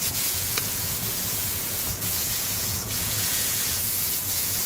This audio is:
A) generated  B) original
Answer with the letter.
A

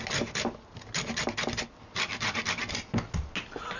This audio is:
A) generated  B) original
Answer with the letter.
B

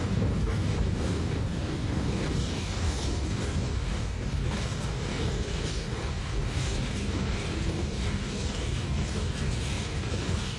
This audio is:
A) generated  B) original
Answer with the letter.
A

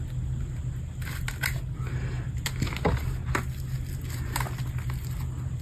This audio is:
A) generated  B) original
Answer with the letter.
B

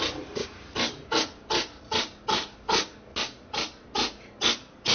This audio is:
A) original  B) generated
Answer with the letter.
A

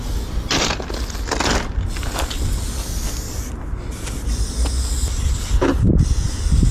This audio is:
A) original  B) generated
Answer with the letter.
A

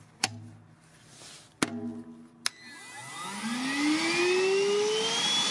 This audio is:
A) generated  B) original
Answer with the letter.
B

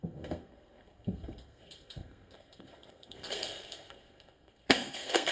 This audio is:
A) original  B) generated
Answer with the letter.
B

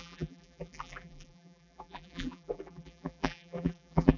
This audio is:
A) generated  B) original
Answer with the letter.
A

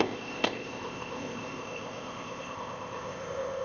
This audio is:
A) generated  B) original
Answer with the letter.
A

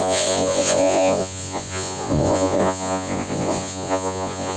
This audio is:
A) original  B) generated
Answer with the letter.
B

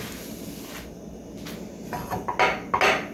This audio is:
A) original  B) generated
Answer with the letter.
A